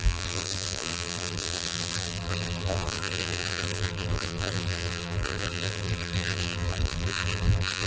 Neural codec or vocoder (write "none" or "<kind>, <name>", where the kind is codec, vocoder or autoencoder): vocoder, BigVGAN v2